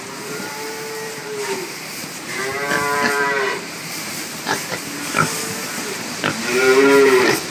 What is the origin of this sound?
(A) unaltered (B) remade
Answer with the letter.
B